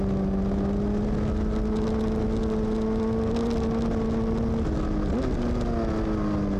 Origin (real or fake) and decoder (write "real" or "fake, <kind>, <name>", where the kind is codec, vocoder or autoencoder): real